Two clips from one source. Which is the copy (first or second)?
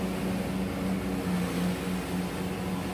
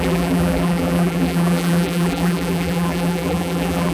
second